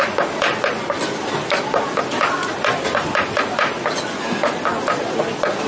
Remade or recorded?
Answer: recorded